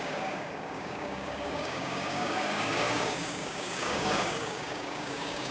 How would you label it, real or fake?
fake